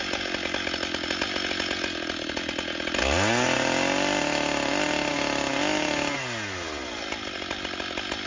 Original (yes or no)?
yes